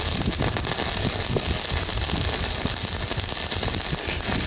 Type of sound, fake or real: real